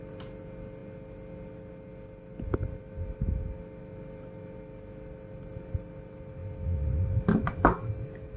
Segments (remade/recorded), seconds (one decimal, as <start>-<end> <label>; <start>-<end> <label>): 0.0-8.4 recorded